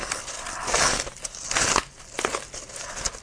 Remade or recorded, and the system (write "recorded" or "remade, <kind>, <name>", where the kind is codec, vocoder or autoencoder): recorded